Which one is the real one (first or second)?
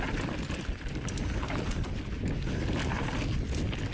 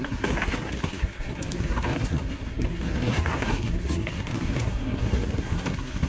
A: first